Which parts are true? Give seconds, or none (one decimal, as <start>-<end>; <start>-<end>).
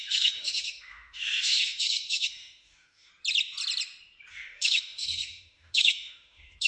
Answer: 3.1-4.3